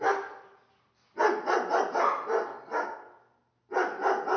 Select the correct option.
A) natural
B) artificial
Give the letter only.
A